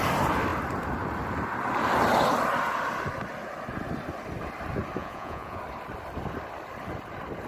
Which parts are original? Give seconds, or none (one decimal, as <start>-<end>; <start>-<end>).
0.0-5.0; 5.6-7.5